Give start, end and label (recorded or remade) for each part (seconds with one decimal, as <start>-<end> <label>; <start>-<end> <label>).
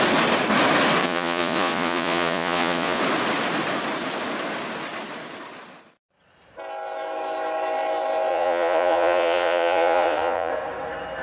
0.0-1.0 recorded; 1.0-3.0 remade; 3.0-8.3 recorded; 8.3-10.5 remade; 10.5-11.2 recorded